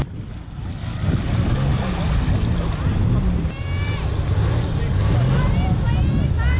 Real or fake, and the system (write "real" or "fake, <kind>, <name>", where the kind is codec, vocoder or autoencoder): real